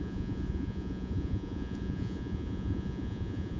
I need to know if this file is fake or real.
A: fake